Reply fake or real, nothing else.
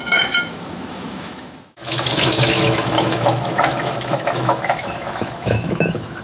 fake